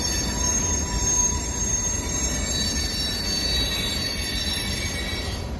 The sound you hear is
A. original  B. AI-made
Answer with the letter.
B